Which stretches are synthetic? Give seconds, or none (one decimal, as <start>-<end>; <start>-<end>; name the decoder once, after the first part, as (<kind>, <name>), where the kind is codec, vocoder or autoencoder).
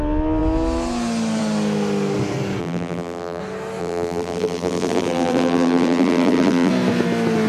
2.6-3.4 (vocoder, BigVGAN v2); 3.8-6.7